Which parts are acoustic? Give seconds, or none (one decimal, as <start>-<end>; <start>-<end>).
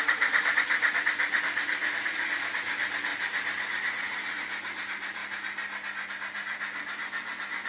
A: 3.1-4.0; 5.2-6.1